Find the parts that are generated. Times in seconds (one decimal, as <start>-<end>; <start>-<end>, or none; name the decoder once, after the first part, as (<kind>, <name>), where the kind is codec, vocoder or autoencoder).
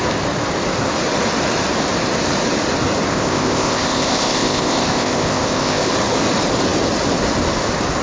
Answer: 3.1-5.9 (codec, ZipCodec)